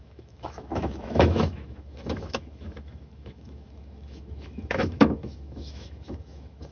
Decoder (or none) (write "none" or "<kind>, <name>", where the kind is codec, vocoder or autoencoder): autoencoder, DAC-VAE